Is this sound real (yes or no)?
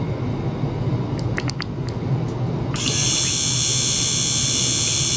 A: yes